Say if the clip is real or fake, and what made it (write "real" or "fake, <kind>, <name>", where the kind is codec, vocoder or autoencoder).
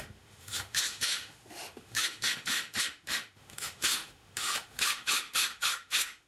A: fake, autoencoder, DAC-VAE